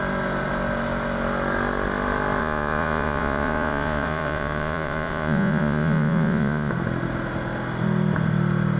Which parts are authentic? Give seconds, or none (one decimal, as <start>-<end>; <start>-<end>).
0.0-2.4; 6.7-8.8